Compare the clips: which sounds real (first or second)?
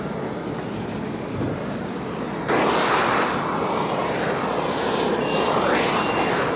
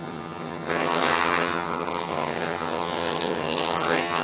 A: first